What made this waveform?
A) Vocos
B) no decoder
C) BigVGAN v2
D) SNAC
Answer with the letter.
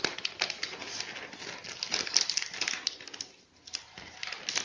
B